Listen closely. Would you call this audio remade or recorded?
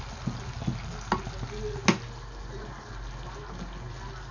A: recorded